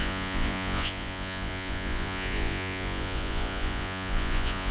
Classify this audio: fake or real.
fake